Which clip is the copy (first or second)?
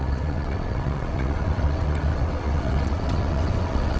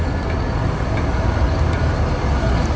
first